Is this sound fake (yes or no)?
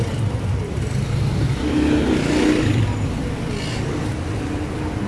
no